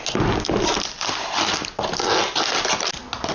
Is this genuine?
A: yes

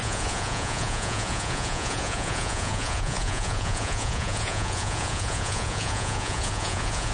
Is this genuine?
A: no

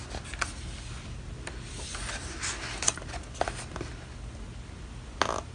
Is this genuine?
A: yes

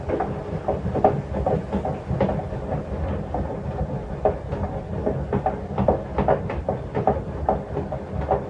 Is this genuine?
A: yes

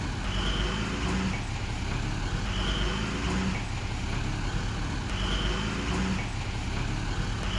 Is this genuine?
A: yes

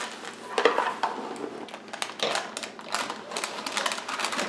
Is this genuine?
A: yes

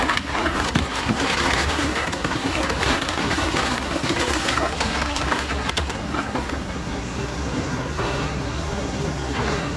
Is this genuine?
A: no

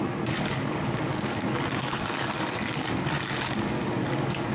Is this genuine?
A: no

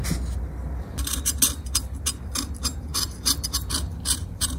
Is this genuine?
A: yes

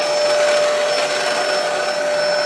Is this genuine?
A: yes